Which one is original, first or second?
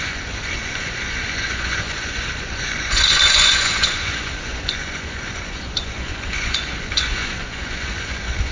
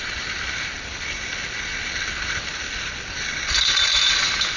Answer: second